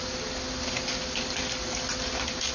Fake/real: real